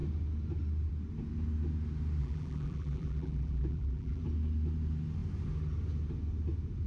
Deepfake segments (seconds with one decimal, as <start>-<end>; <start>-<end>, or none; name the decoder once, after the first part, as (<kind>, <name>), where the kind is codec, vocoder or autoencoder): 2.2-4.2 (vocoder, BigVGAN v2)